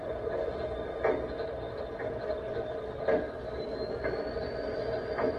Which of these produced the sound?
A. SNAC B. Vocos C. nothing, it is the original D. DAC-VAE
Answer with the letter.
C